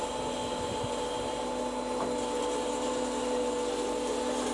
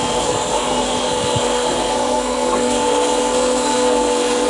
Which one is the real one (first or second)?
first